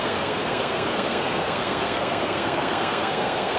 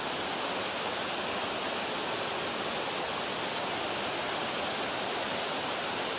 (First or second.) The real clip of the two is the second